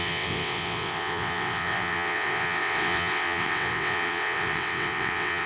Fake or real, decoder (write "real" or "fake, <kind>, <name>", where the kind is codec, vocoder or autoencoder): fake, vocoder, WaveNeXt